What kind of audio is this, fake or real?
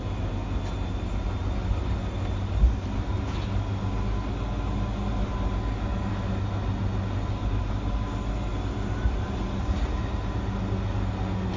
real